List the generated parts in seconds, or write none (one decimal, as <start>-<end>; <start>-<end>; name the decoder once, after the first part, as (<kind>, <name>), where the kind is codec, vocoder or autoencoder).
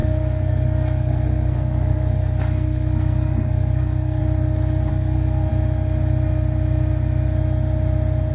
0.0-4.2 (codec, SNAC); 4.9-5.5